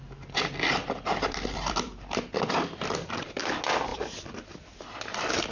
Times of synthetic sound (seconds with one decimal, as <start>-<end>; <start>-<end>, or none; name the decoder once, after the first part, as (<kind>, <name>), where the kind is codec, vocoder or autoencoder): 0.8-3.4 (vocoder, BigVGAN v2); 3.9-4.8